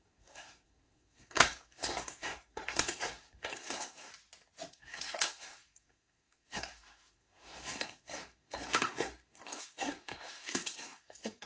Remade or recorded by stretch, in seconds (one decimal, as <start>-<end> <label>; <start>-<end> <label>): 0.0-4.1 remade; 4.1-4.7 recorded; 4.7-11.5 remade